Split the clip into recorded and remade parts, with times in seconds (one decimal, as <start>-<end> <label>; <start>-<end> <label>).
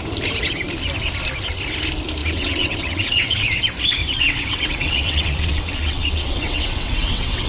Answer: 0.0-2.2 recorded; 2.2-3.6 remade; 3.6-4.0 recorded; 4.0-7.5 remade